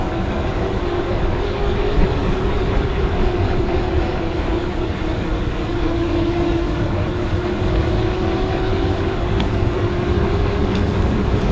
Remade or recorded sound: remade